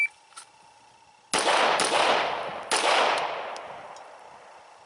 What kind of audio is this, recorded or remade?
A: recorded